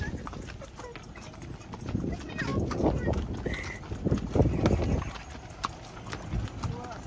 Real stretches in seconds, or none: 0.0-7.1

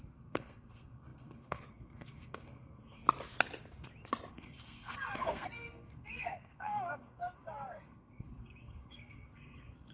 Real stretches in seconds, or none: 3.0-4.3

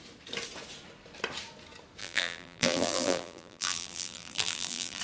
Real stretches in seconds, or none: 0.0-2.0

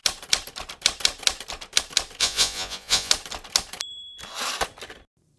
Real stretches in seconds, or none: 0.0-2.2; 3.1-5.4

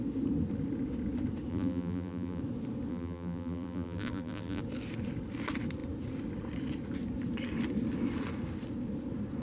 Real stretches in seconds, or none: 0.0-1.5; 2.4-2.9; 4.6-9.4

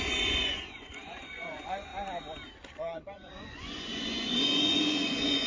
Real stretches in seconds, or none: 1.9-2.8

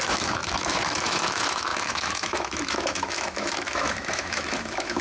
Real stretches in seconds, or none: none